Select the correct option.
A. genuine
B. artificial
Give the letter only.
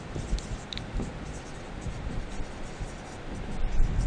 A